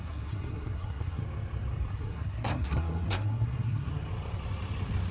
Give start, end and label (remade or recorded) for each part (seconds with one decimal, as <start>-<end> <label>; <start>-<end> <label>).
0.0-1.2 remade; 1.2-1.9 recorded; 1.9-3.9 remade; 3.9-5.1 recorded